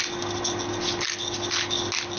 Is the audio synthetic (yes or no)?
no